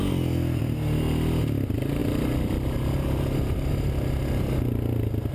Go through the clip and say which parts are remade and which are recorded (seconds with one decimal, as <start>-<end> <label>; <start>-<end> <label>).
0.0-5.3 recorded